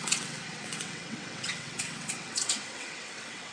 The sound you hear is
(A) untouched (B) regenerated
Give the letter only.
B